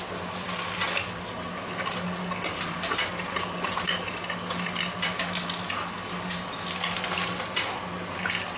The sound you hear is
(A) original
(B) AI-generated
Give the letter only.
A